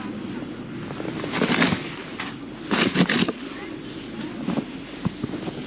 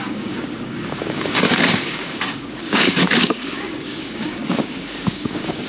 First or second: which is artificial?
second